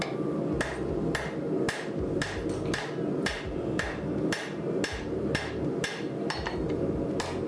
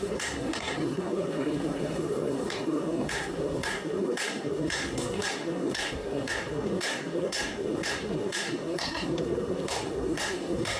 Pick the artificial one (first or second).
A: second